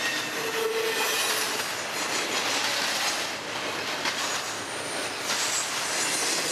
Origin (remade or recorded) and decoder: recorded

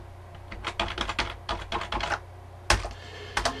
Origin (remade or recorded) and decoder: recorded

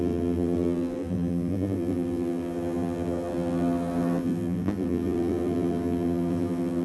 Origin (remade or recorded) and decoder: remade, vocoder, BigVGAN v2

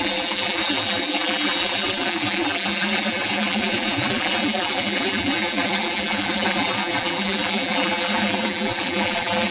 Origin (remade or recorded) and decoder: remade, vocoder, BigVGAN v2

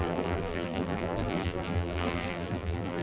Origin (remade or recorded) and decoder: remade, vocoder, BigVGAN v2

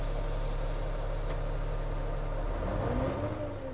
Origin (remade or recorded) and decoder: recorded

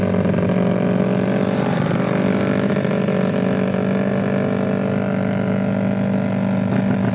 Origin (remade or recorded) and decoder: recorded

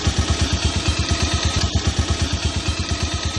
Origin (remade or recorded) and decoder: remade, vocoder, BigVGAN v2